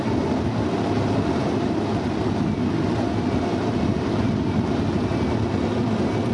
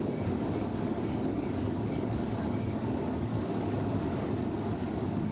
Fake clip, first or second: second